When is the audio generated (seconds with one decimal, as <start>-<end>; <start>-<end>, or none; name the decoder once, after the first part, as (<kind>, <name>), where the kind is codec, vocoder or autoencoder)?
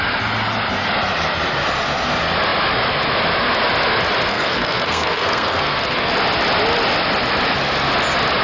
4.3-6.1 (codec, SNAC)